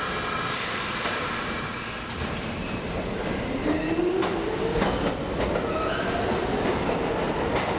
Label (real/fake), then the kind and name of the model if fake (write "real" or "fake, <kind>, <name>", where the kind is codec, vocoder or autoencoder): real